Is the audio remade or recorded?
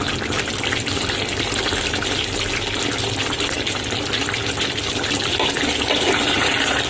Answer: recorded